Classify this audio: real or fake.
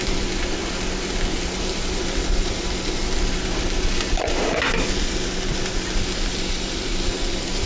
fake